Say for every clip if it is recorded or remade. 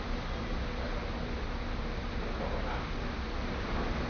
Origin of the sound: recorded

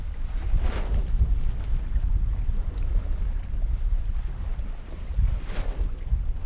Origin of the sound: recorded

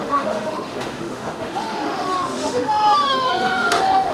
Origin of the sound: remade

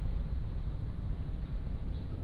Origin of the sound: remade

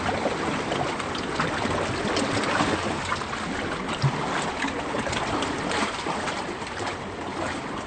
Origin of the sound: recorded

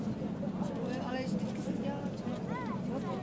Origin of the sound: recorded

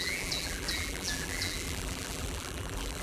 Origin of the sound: remade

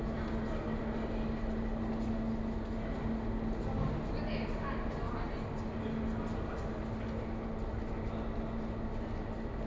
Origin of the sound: recorded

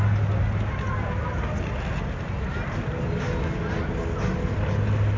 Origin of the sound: recorded